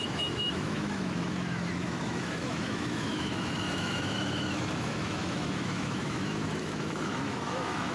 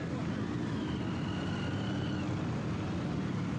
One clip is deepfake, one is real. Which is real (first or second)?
second